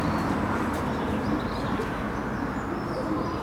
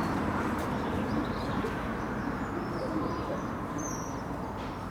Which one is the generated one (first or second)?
second